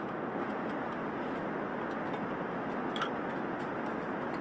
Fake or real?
real